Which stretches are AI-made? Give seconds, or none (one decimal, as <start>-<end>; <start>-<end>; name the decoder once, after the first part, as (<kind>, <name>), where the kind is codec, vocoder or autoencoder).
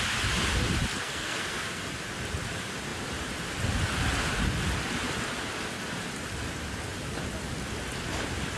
0.9-1.9 (codec, SNAC)